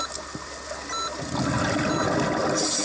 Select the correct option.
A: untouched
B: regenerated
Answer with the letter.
A